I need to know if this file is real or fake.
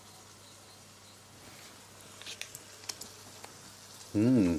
real